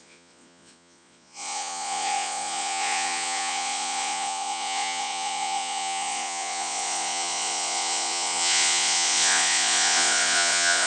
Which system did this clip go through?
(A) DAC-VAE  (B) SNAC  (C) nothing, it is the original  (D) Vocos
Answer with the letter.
D